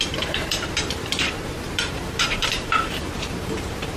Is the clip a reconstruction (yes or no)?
yes